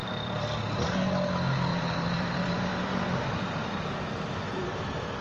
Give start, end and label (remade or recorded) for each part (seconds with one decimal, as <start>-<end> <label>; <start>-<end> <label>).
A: 0.0-1.0 remade; 1.0-1.7 recorded; 1.7-4.8 remade; 4.8-5.2 recorded